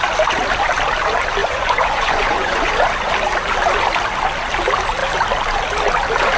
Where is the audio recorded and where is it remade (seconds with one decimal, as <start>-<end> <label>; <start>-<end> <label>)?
0.0-1.4 recorded; 1.4-2.7 remade; 2.7-6.4 recorded